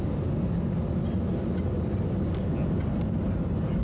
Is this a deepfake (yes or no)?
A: no